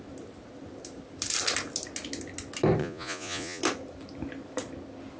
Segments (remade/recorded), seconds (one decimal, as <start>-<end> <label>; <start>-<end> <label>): 0.0-2.8 recorded; 2.8-3.6 remade; 3.6-5.2 recorded